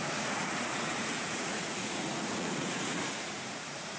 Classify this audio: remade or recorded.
remade